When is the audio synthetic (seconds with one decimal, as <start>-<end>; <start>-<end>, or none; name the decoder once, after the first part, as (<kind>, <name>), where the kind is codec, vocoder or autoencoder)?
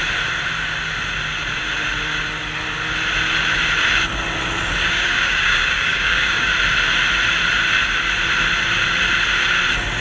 4.8-6.5 (codec, DAC)